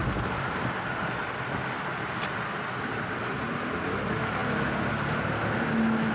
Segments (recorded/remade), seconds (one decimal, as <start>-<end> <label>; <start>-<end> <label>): 0.0-6.1 recorded